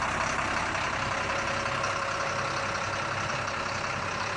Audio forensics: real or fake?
real